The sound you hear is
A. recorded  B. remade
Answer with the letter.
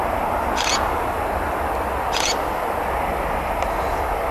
A